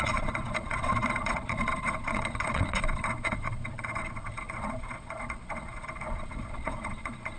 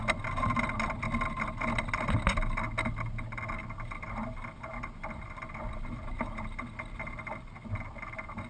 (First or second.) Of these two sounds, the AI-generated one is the first